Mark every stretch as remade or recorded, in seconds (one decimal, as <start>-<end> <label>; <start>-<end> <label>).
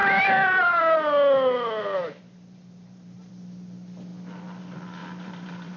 0.0-0.8 remade; 0.8-2.0 recorded; 2.0-3.3 remade; 3.3-5.0 recorded; 5.0-5.8 remade